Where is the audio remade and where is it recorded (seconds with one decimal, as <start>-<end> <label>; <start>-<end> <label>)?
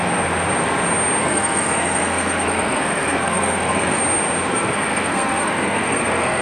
0.0-1.2 recorded; 1.2-4.0 remade; 4.0-4.5 recorded; 4.5-6.4 remade